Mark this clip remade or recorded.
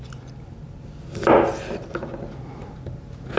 recorded